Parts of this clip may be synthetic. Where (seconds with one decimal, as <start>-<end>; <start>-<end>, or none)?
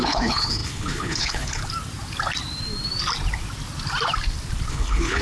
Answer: 0.0-1.6; 4.7-5.2